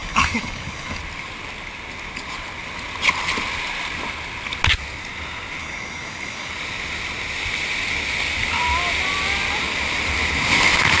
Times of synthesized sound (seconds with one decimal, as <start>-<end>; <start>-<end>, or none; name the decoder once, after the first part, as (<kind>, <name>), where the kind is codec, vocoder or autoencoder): 0.0-1.0 (codec, DAC); 5.6-6.5